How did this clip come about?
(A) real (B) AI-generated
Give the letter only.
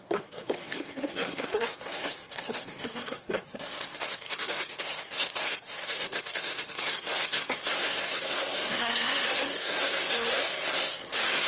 B